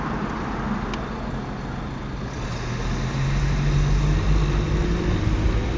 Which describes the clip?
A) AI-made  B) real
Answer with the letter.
B